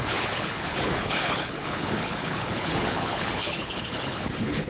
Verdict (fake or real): fake